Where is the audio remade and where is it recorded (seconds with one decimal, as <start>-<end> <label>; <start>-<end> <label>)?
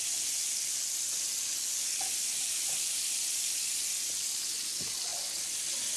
0.0-6.0 recorded